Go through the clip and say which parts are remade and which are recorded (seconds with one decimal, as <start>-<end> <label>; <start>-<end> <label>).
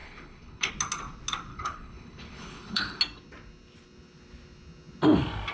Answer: 0.0-0.7 remade; 0.7-1.5 recorded; 1.5-3.0 remade; 3.0-5.5 recorded